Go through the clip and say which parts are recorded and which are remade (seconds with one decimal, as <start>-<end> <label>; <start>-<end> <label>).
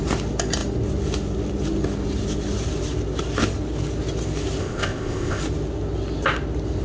0.0-4.6 recorded; 4.6-5.4 remade; 5.4-6.8 recorded